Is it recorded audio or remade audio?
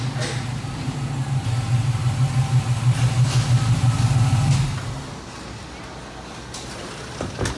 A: recorded